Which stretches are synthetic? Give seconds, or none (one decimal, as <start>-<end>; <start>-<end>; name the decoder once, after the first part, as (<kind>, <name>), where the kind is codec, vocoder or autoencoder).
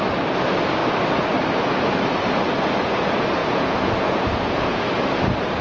3.4-4.9 (vocoder, Vocos)